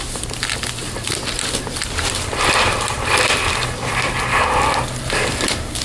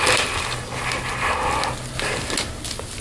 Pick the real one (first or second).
second